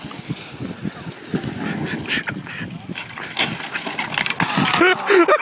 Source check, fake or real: real